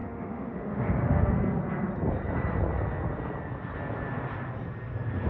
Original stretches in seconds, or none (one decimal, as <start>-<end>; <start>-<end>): 1.3-5.3